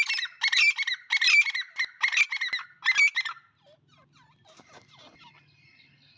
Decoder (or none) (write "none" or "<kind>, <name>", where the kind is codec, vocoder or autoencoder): none